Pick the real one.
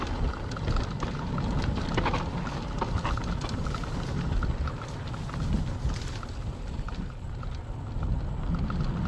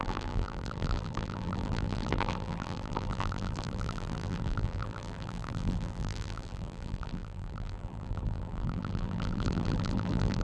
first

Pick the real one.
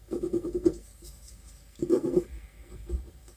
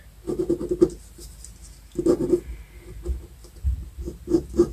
second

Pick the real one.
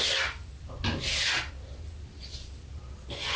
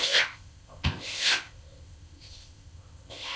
first